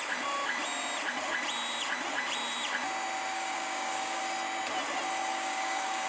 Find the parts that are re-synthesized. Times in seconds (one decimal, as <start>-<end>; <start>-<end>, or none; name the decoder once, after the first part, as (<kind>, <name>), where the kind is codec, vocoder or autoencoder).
3.3-4.2 (codec, DAC); 5.3-6.1